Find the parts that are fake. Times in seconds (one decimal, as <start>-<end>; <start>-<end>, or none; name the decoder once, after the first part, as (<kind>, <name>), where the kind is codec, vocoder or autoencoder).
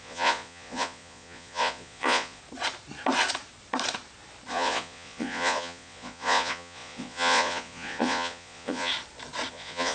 0.0-2.4 (vocoder, Vocos); 4.5-8.9; 9.5-9.9